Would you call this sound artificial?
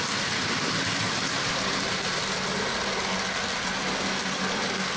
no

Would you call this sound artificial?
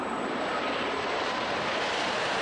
yes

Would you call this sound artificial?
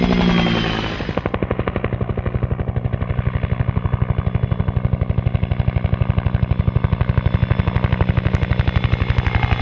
no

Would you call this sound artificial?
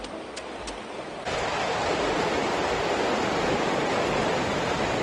no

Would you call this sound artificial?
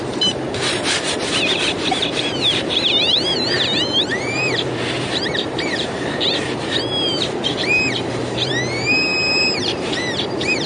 yes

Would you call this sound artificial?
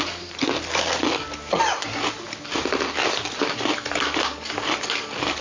no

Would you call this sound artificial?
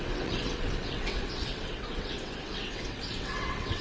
yes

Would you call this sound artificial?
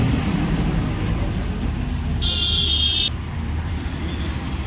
no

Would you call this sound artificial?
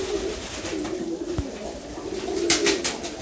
no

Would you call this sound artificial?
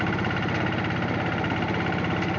no